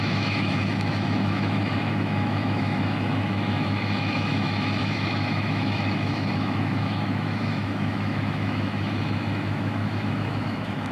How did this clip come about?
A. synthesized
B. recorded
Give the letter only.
A